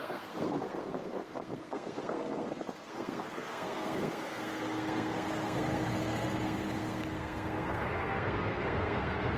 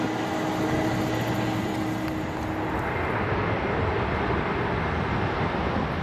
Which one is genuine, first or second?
second